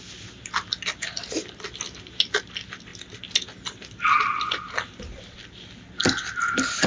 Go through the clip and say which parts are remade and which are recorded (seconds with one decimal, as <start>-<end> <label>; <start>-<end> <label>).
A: 0.0-6.9 recorded